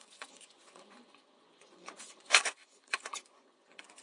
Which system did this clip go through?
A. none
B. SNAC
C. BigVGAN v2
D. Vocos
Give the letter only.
D